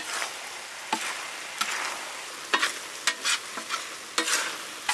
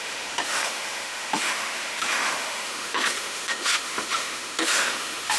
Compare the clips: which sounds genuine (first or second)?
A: first